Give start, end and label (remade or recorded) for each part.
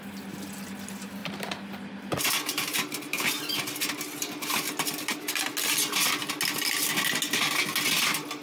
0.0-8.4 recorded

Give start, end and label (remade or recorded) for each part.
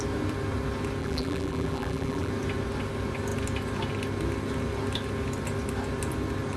0.0-1.0 recorded; 1.0-2.3 remade; 2.3-6.6 recorded